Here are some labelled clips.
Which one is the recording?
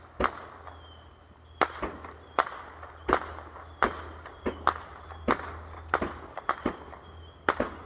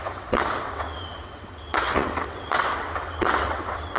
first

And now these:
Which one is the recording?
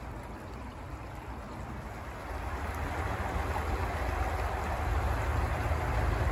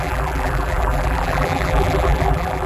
first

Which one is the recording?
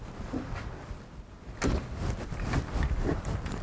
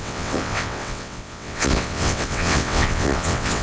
first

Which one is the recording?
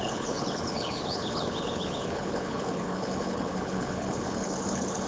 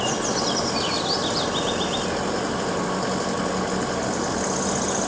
second